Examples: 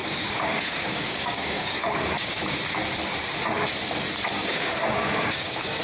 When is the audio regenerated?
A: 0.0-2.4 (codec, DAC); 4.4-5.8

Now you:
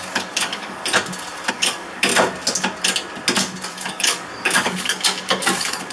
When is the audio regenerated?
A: 0.0-0.8 (codec, DAC); 1.5-2.1; 3.7-5.9

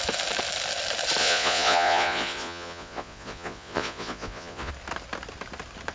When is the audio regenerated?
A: 1.2-4.7 (vocoder, Vocos)

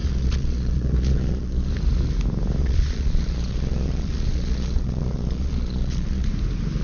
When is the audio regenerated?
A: 0.0-1.7 (vocoder, Vocos); 2.6-6.3

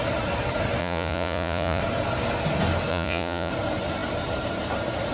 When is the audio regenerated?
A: 0.8-1.8 (vocoder, Vocos); 2.9-3.5